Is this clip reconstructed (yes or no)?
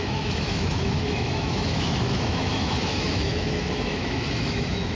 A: yes